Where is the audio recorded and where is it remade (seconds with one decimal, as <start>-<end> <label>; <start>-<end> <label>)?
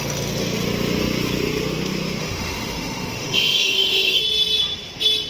0.0-2.2 recorded; 2.2-4.2 remade; 4.2-5.3 recorded